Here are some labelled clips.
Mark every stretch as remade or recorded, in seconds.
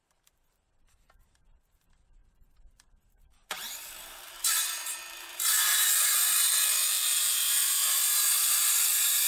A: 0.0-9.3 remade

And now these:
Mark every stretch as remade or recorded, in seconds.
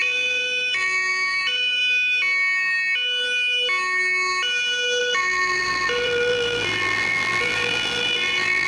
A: 0.0-1.8 remade; 1.8-5.0 recorded; 5.0-8.7 remade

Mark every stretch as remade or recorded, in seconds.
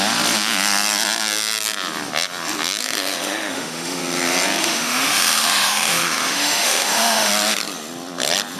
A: 0.0-2.8 recorded; 2.8-4.0 remade; 4.0-4.6 recorded; 4.6-7.3 remade; 7.3-8.6 recorded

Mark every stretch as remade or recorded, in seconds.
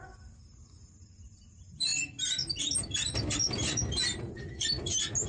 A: 0.0-3.4 recorded; 3.4-4.8 remade; 4.8-5.3 recorded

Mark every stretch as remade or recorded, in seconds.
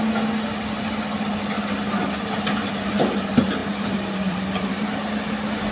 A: 0.0-3.6 recorded; 3.6-4.8 remade; 4.8-5.7 recorded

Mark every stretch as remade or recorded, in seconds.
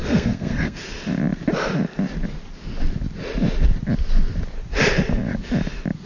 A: 0.0-0.8 remade; 0.8-6.1 recorded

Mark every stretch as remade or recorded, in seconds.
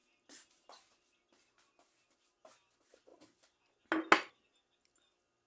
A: 0.0-5.5 recorded